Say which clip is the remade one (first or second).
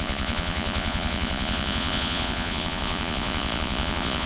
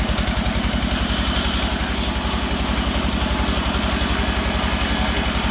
first